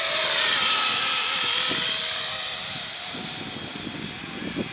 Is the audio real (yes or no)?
yes